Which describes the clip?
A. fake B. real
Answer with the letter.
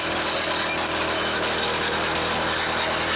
B